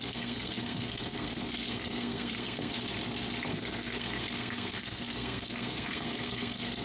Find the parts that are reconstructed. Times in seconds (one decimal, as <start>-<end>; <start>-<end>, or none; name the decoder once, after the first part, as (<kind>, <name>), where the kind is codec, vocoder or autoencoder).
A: 0.0-2.7 (codec, SNAC); 3.5-6.8